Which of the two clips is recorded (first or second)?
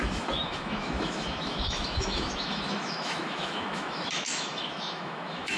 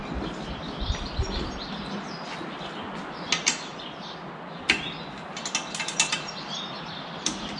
second